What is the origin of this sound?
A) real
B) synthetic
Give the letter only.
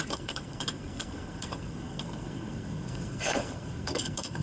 B